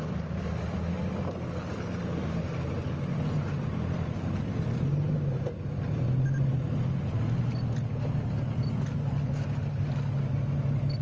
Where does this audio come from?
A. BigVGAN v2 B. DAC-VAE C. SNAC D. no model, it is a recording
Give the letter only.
D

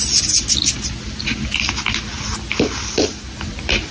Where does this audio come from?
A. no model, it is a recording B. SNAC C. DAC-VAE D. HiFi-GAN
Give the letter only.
A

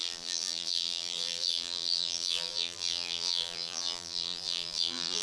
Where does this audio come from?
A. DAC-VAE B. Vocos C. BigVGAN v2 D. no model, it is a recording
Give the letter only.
C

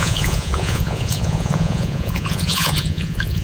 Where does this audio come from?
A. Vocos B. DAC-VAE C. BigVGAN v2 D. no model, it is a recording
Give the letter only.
A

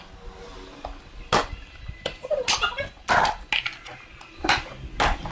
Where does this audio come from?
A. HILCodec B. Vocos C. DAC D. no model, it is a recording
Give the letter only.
D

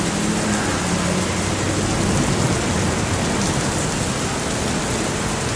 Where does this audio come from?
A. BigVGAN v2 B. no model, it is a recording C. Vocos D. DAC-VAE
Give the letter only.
B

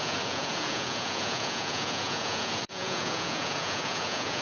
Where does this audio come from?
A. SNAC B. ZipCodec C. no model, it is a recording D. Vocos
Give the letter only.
D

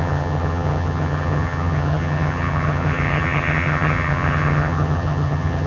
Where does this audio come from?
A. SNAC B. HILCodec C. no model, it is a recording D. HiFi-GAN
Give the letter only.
D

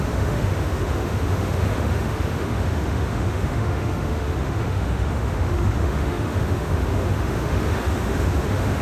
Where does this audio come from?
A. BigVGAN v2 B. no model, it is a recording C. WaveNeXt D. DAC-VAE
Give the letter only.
D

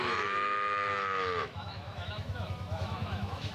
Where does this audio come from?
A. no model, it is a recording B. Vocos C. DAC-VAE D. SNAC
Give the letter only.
C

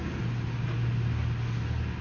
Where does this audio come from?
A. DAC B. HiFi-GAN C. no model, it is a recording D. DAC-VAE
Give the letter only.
C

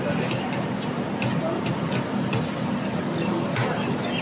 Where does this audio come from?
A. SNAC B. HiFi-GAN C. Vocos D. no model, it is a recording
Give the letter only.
D